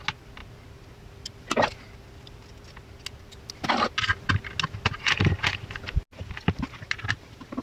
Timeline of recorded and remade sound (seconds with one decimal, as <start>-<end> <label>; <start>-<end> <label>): 0.0-7.6 recorded